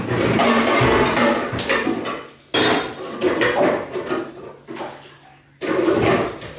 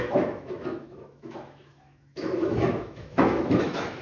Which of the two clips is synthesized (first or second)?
second